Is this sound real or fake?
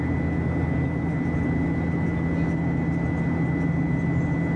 real